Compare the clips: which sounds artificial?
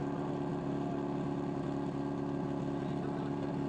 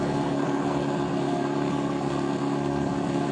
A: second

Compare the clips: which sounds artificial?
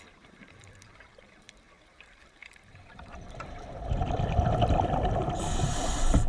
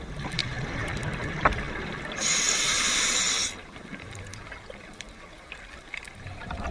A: first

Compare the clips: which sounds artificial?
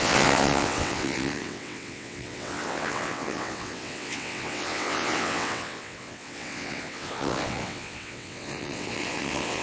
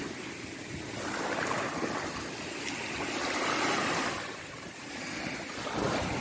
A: first